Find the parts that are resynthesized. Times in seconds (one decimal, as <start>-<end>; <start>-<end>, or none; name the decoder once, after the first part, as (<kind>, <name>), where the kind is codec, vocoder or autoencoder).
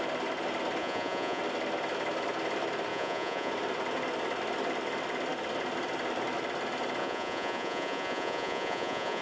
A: 0.8-1.4 (vocoder, Vocos); 2.9-3.5; 7.0-9.2